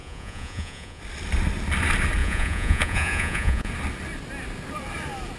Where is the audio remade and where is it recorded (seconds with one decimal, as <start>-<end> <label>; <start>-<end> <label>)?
0.0-1.0 remade; 1.0-2.2 recorded; 2.2-3.7 remade; 3.7-5.4 recorded